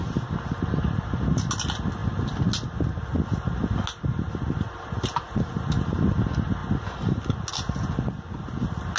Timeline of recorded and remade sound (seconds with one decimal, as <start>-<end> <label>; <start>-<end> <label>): 0.0-9.0 recorded